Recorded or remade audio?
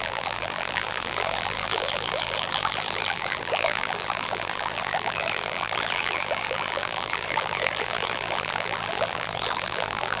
remade